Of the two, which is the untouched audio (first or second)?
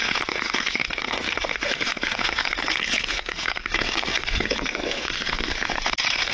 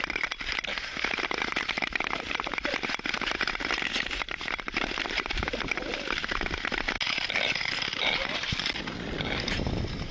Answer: second